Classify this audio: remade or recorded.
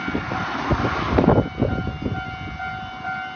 recorded